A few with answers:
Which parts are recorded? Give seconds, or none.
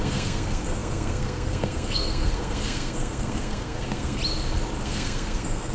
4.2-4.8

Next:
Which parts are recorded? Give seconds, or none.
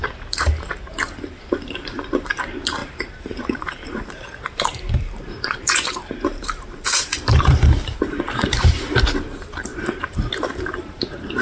0.5-1.4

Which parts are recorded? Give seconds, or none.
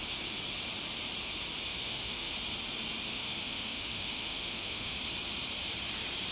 0.0-1.7; 2.3-3.1; 5.0-6.3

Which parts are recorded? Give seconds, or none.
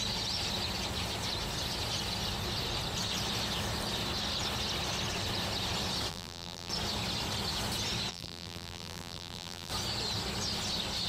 0.0-6.1; 6.7-8.1; 9.7-11.1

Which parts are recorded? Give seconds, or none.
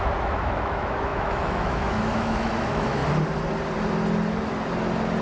3.0-5.2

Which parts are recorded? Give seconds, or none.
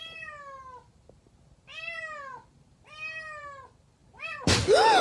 0.0-5.0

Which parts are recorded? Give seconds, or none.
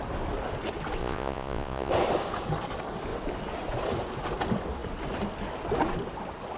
0.0-1.0; 1.9-6.6